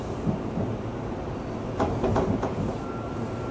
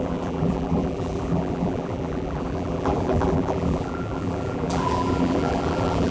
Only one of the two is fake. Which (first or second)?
second